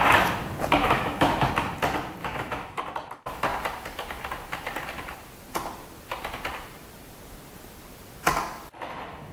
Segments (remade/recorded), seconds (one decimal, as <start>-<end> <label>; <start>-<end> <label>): 0.0-0.8 recorded; 0.8-1.5 remade; 1.5-2.2 recorded; 2.2-2.8 remade; 2.8-9.3 recorded